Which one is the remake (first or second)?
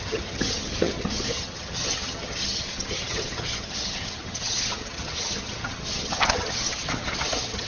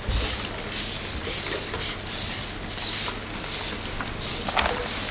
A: first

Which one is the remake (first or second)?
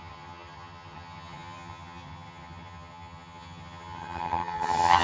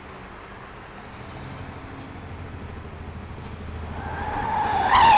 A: first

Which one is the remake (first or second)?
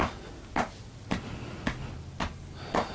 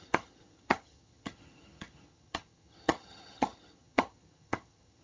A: second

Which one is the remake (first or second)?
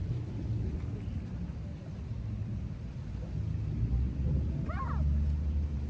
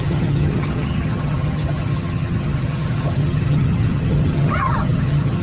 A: second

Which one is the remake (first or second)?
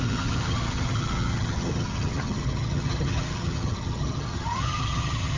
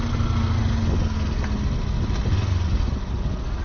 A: first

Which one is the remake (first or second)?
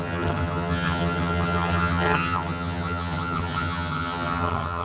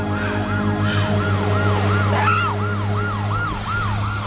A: first